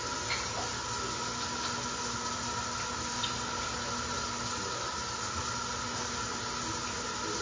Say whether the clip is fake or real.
real